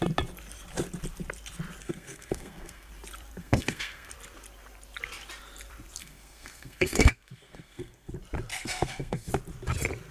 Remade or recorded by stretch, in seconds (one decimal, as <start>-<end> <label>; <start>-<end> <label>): 0.0-1.8 recorded; 1.8-2.9 remade; 2.9-3.4 recorded; 3.4-4.1 remade; 4.1-6.0 recorded; 6.0-8.1 remade; 8.1-8.5 recorded; 8.5-9.3 remade; 9.3-10.1 recorded